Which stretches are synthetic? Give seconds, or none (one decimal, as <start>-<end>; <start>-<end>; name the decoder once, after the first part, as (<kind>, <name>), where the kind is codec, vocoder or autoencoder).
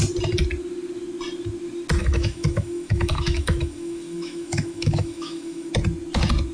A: 2.0-5.7 (autoencoder, DAC-VAE)